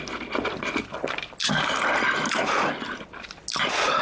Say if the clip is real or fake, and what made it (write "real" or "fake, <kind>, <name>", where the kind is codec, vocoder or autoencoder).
real